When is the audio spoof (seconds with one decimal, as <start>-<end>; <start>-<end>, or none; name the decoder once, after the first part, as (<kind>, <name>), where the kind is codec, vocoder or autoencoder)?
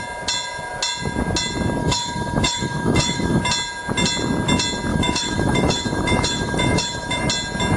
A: 1.8-3.4 (autoencoder, DAC-VAE); 4.9-7.2